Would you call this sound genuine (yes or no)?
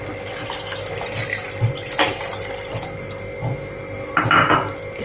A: yes